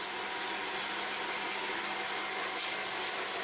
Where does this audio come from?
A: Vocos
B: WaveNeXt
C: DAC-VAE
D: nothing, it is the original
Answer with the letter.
D